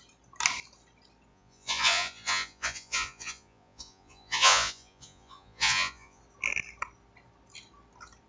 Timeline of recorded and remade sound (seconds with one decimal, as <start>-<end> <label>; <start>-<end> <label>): 0.0-1.3 recorded; 1.3-6.2 remade; 6.2-8.3 recorded